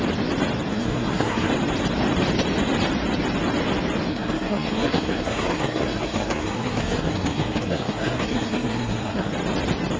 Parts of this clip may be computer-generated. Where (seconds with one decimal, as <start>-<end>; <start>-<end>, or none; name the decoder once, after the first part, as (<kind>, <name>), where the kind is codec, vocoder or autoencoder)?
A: 0.7-1.5 (codec, SNAC); 4.1-9.3